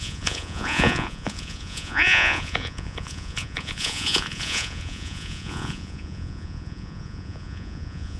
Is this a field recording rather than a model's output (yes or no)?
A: no